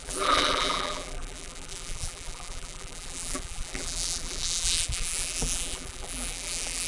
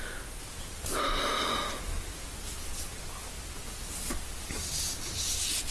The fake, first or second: first